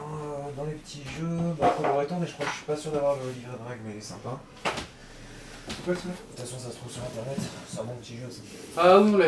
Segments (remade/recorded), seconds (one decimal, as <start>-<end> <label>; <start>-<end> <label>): 0.0-9.3 recorded